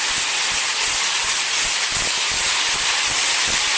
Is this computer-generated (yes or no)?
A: no